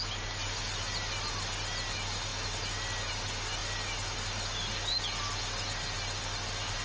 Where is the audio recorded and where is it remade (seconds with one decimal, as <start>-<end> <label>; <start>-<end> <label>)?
0.0-6.8 recorded